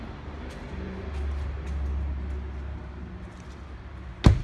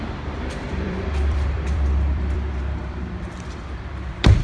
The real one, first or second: first